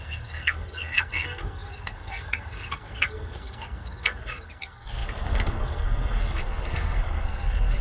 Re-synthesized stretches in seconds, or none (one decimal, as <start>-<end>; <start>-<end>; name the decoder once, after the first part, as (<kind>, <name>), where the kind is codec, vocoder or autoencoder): 0.0-7.8 (codec, SNAC)